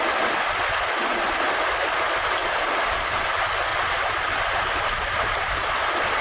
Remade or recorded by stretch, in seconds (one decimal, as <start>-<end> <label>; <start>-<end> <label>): 0.0-2.4 recorded; 2.4-3.2 remade; 3.2-3.7 recorded; 3.7-5.6 remade; 5.6-6.2 recorded